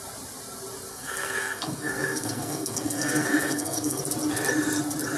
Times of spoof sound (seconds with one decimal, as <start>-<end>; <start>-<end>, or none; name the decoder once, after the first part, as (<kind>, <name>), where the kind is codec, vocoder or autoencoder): 0.9-4.0 (codec, SNAC)